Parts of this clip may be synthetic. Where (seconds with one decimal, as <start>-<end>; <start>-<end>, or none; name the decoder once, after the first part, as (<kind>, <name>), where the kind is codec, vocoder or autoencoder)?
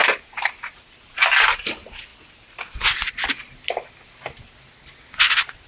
0.0-1.6 (vocoder, BigVGAN v2); 2.1-3.1